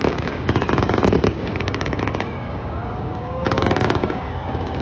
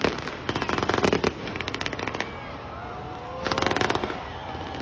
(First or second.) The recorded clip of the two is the second